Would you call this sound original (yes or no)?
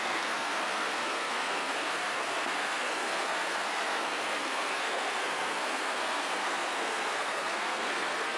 no